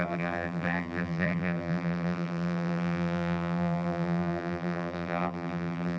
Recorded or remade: remade